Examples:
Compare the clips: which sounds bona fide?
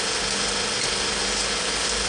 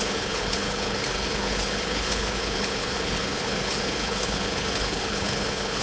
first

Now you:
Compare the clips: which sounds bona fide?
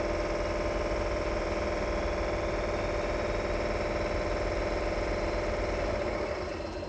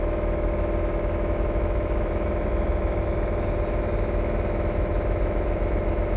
first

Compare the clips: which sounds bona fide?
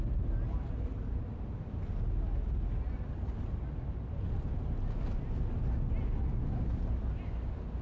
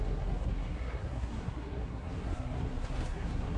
first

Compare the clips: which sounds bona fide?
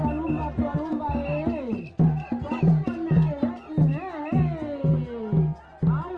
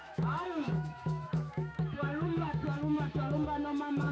first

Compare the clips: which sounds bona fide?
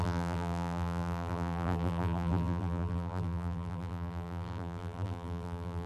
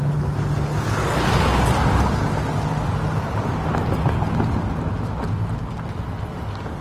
second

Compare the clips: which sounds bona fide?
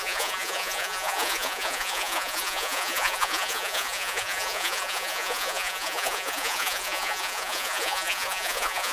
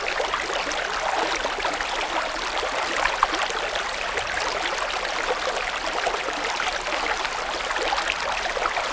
second